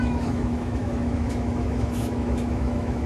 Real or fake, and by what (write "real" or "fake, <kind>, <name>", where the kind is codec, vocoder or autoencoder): fake, autoencoder, DAC-VAE